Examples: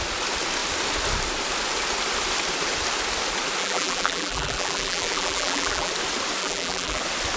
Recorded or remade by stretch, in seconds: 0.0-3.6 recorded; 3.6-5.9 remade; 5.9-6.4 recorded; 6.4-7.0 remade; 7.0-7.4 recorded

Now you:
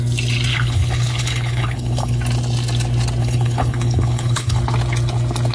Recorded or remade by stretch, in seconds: 0.0-0.5 recorded; 0.5-2.2 remade; 2.2-3.2 recorded; 3.2-4.6 remade; 4.6-5.5 recorded

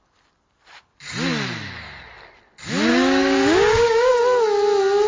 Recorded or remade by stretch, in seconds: 0.0-2.9 recorded; 2.9-4.1 remade; 4.1-5.1 recorded

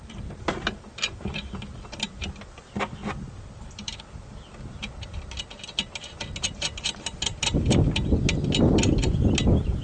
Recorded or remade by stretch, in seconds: 0.0-3.0 recorded; 3.0-4.0 remade; 4.0-9.8 recorded

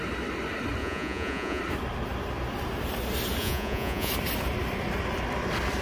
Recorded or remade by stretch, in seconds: 0.0-0.8 recorded; 0.8-1.6 remade; 1.6-3.4 recorded; 3.4-4.1 remade; 4.1-5.8 recorded